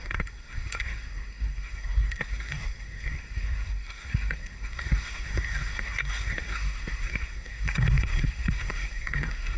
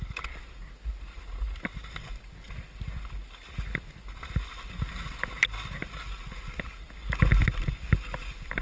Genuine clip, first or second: second